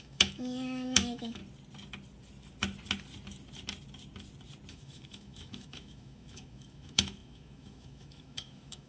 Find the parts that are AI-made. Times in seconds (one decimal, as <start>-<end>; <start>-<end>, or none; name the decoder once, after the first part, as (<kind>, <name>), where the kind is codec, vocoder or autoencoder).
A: 0.0-1.4 (autoencoder, DAC-VAE); 4.7-8.9